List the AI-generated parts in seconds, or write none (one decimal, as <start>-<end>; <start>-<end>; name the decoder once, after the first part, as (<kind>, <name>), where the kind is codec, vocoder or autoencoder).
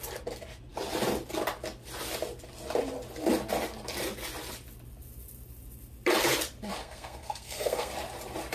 6.8-7.9 (codec, SNAC)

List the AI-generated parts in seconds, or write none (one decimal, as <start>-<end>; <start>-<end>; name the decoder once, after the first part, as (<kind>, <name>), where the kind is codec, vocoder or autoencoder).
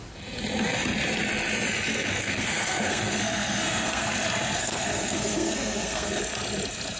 2.2-4.1 (codec, SNAC); 4.6-6.2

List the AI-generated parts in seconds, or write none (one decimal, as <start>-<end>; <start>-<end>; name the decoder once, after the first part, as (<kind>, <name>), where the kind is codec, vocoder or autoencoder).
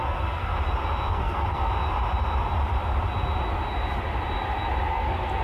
0.0-0.5 (codec, SNAC); 1.1-1.7; 4.9-5.4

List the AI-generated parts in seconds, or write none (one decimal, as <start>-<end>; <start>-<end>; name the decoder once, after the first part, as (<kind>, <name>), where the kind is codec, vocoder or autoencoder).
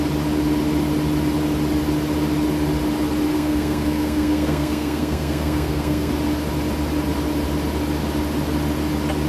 3.3-6.1 (codec, SNAC)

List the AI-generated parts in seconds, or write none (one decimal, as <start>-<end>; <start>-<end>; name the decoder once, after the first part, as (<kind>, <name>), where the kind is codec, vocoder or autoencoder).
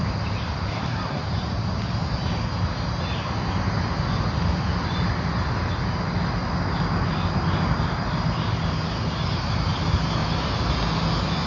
0.7-1.2 (codec, SNAC)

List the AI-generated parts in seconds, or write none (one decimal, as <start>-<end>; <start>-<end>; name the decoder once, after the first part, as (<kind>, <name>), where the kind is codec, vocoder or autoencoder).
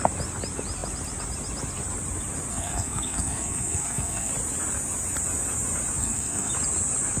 2.5-4.3 (codec, SNAC); 6.0-6.5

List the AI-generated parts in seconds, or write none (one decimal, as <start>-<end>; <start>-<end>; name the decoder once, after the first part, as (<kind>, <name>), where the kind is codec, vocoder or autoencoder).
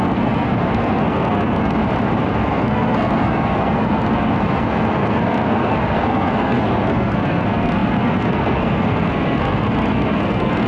0.0-1.8 (codec, SNAC); 2.3-10.7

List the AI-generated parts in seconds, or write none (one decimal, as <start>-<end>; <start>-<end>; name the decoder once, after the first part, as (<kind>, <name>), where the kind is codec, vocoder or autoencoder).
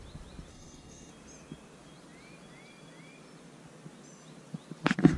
0.5-1.1 (codec, SNAC)